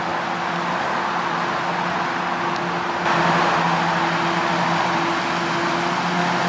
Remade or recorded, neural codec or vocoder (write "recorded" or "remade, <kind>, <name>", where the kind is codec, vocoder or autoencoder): recorded